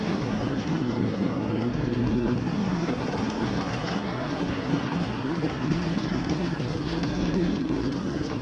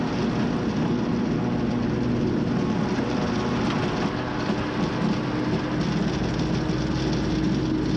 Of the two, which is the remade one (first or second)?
first